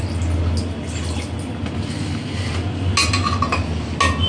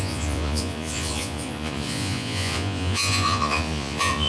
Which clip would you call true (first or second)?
first